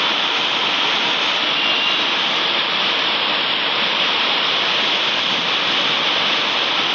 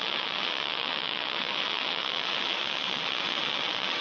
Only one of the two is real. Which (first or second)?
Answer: first